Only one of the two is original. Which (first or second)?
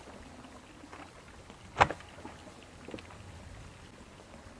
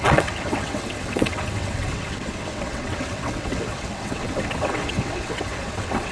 first